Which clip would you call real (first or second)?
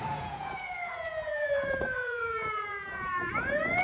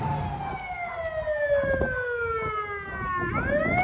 second